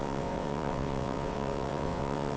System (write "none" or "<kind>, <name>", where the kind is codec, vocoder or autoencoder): vocoder, WaveNeXt